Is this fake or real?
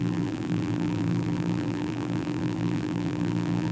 fake